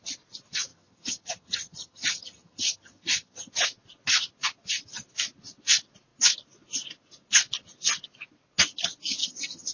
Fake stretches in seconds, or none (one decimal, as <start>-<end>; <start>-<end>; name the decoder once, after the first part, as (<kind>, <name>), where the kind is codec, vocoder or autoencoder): 0.7-3.5 (vocoder, HiFi-GAN); 9.2-9.7